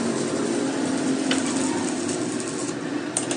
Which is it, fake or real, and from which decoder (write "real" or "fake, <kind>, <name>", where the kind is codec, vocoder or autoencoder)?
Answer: real